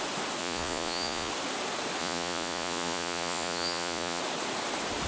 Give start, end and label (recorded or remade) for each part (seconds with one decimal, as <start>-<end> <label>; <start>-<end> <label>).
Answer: 0.0-0.4 recorded; 0.4-1.3 remade; 1.3-2.0 recorded; 2.0-4.2 remade; 4.2-5.1 recorded